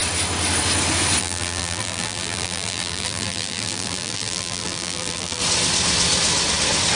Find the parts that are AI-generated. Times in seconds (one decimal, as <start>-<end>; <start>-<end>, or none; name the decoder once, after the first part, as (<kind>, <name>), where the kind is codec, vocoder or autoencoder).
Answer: 1.2-5.4 (vocoder, BigVGAN v2)